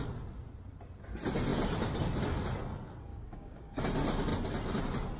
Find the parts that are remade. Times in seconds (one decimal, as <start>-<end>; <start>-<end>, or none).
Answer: 3.1-3.8